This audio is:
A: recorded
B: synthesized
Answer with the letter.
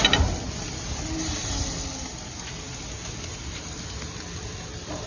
A